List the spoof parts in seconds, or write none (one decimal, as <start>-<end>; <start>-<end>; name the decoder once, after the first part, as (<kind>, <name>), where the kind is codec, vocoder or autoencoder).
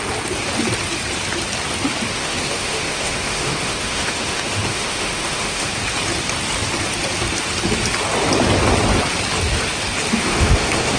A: 2.1-5.7 (autoencoder, DAC-VAE); 10.1-11.0